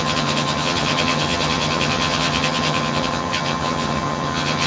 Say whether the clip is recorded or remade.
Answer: remade